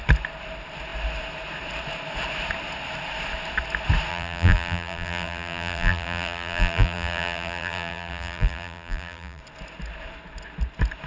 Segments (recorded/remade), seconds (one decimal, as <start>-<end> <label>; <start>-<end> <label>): 0.0-4.1 recorded; 4.1-9.4 remade; 9.4-11.1 recorded